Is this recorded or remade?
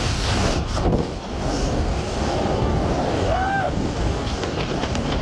remade